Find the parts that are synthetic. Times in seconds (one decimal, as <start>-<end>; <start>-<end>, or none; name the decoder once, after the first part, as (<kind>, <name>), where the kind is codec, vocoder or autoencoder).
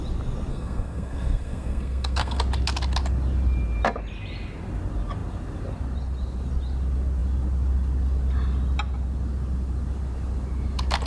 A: 0.5-2.4 (codec, SNAC)